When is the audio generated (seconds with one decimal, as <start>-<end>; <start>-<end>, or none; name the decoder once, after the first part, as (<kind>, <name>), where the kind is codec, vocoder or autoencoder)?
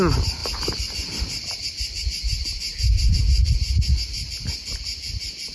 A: none